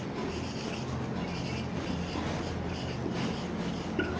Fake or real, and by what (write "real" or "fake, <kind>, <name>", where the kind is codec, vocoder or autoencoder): real